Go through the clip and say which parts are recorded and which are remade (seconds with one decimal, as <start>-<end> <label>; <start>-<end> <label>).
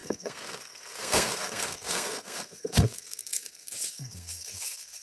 0.0-5.0 remade